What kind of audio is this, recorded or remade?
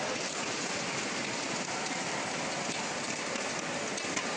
recorded